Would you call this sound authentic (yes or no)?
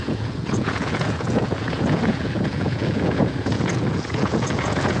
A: no